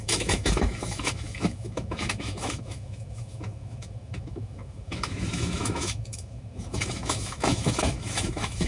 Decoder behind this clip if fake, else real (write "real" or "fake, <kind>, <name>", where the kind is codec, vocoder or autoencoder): fake, autoencoder, DAC-VAE